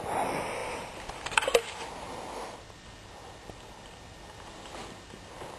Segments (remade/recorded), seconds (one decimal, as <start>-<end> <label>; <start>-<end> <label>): 0.0-0.6 recorded; 0.6-1.4 remade; 1.4-5.6 recorded